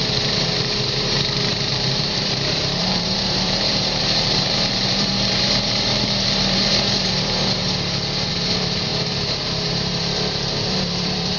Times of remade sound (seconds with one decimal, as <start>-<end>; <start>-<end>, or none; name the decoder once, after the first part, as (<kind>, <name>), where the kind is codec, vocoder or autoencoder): 0.0-7.6 (vocoder, BigVGAN v2); 8.3-11.4